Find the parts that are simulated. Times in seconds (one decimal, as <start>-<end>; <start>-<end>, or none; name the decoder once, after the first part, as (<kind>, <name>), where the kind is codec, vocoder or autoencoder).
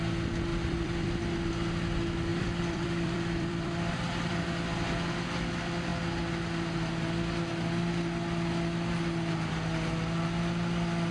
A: 0.5-1.1 (vocoder, BigVGAN v2); 2.3-4.3